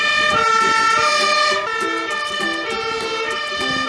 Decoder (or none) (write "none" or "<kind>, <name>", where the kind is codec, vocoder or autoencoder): none